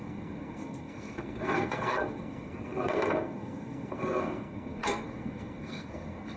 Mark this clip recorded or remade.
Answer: remade